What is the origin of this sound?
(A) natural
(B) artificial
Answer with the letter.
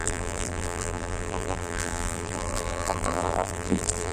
B